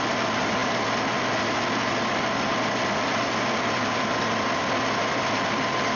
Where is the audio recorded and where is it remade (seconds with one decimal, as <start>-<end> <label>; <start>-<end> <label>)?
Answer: 0.0-6.0 recorded